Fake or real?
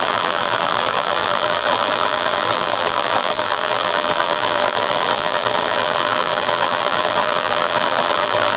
fake